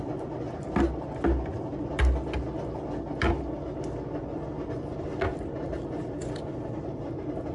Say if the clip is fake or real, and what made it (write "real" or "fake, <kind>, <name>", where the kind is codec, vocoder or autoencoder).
real